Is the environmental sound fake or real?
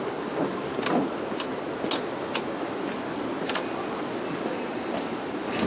real